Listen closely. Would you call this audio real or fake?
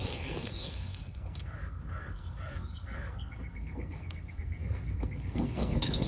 fake